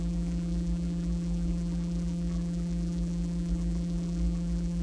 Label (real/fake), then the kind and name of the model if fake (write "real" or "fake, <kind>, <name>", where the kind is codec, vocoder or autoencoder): fake, vocoder, BigVGAN v2